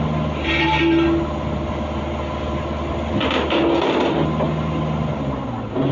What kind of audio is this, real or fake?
real